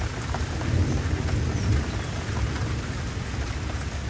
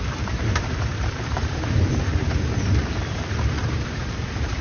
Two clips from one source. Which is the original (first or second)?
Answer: first